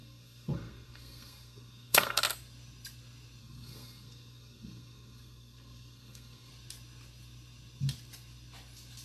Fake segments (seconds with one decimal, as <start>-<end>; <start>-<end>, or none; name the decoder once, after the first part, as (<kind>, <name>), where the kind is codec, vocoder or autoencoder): 0.0-2.2 (codec, SNAC); 3.4-6.5